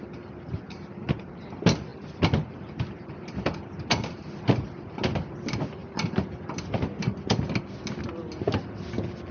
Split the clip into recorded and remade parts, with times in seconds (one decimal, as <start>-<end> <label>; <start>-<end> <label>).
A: 0.0-9.3 recorded